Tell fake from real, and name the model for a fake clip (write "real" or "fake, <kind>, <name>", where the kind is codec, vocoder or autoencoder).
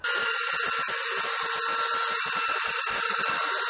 real